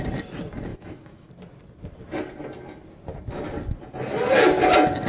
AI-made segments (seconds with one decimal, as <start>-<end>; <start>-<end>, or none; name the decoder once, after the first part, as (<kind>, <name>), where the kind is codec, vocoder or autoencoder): 0.7-1.3 (autoencoder, DAC-VAE)